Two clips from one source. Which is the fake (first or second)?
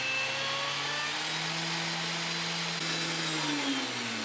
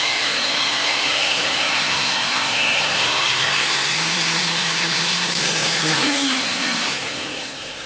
second